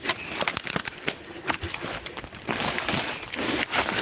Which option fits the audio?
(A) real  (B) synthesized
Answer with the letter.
A